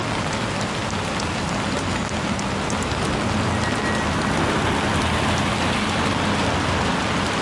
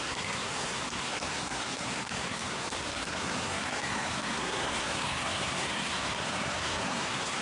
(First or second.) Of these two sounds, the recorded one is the first